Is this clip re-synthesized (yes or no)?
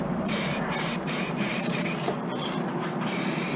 yes